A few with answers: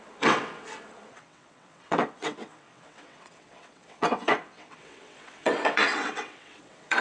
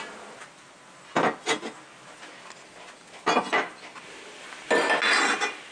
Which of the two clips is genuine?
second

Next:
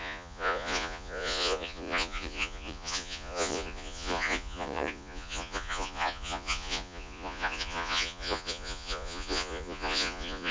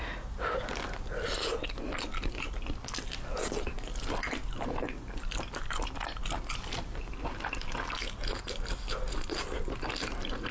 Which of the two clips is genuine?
second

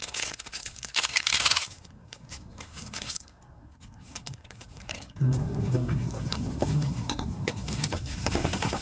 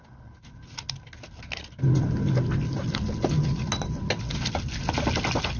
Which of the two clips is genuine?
second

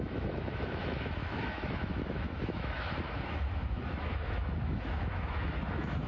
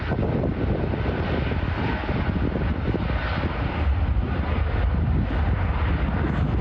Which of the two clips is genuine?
second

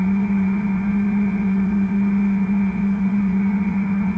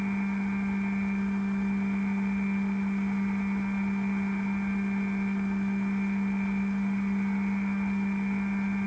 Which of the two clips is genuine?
second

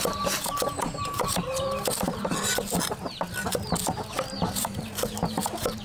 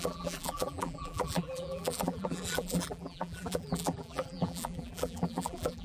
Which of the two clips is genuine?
first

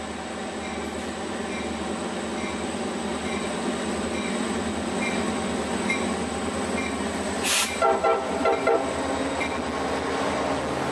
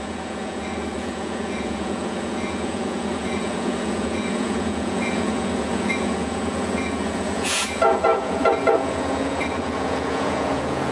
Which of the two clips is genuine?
first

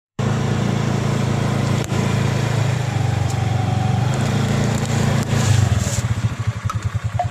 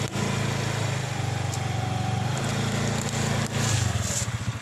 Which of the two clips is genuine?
second